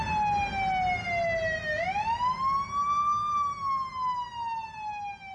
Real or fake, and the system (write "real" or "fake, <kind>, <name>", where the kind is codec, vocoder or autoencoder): real